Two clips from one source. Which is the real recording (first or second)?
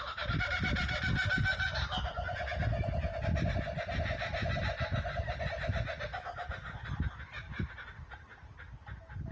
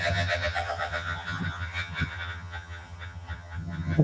first